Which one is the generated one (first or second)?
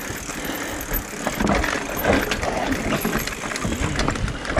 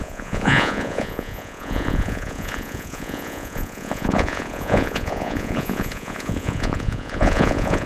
second